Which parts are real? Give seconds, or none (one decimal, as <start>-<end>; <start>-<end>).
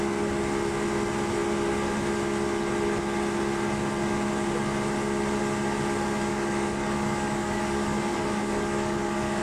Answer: 0.0-6.3